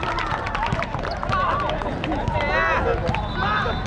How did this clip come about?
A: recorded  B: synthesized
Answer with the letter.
A